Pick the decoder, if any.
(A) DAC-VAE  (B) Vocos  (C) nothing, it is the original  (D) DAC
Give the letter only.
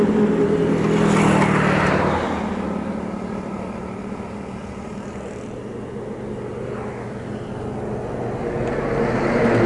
C